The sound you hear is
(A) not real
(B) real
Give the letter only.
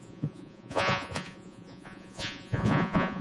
A